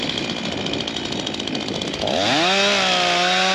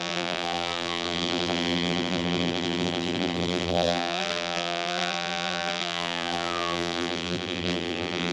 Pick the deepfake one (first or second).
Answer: second